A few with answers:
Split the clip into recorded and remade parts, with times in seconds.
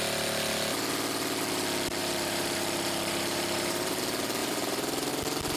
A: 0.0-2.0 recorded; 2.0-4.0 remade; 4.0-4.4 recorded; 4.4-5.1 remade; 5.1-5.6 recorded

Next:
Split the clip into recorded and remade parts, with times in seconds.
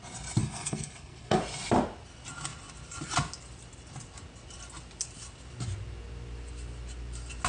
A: 0.0-0.4 recorded; 0.4-1.4 remade; 1.4-7.5 recorded